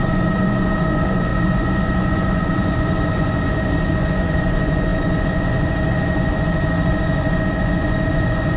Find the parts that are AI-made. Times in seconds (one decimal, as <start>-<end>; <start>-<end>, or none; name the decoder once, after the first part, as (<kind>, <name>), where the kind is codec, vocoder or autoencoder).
0.0-8.6 (vocoder, Vocos)